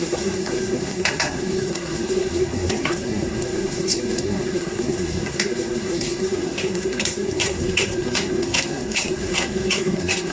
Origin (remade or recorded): remade